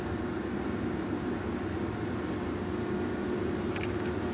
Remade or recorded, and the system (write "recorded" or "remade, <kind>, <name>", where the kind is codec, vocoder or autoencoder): recorded